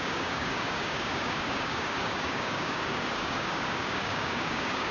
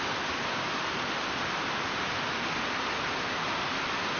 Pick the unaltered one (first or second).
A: second